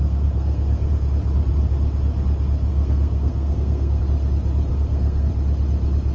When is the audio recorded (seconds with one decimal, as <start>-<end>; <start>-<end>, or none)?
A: 0.9-2.7; 4.0-4.7; 5.3-6.1